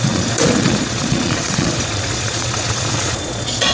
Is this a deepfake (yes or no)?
yes